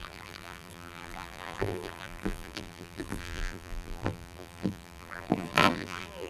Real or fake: fake